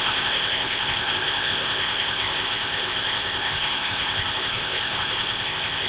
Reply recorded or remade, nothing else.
remade